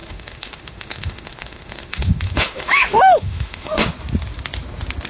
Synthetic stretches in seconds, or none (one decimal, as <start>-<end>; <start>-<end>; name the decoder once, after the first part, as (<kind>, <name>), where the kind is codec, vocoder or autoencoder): 0.0-3.9 (autoencoder, DAC-VAE)